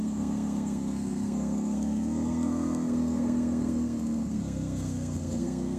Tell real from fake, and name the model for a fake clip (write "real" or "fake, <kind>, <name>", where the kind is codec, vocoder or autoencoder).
fake, codec, SNAC